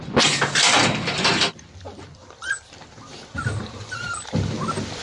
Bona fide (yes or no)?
no